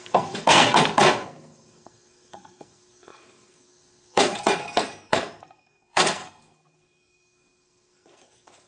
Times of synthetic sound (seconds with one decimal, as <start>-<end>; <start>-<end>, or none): 0.0-8.7